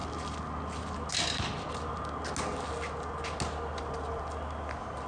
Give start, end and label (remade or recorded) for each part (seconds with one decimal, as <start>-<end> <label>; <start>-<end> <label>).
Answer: 0.0-5.1 recorded